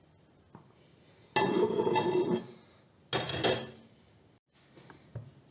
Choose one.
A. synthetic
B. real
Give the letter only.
B